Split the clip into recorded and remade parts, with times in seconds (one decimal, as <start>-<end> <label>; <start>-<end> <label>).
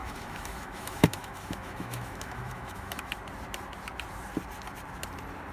0.0-3.1 remade; 3.1-5.5 recorded